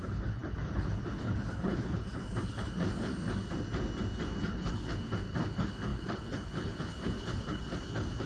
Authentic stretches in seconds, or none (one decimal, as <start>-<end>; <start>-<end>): 3.1-4.5